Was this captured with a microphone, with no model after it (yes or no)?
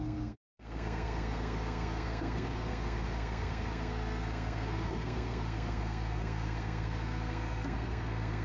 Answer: no